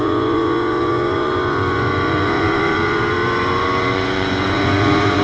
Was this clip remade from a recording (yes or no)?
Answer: yes